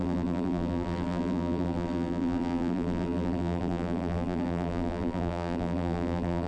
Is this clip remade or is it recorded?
remade